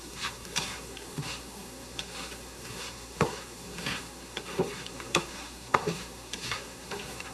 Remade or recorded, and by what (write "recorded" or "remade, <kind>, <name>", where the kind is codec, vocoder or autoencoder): remade, codec, SNAC